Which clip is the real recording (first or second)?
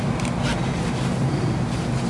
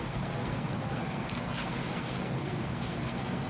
first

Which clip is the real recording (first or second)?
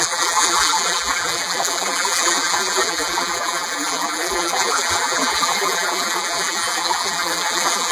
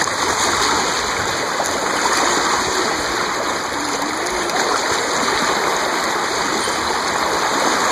second